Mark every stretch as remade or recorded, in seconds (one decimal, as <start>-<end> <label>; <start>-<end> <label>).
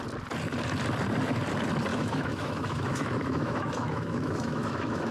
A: 0.0-1.9 recorded; 1.9-5.1 remade